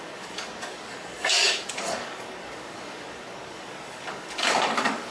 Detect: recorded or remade remade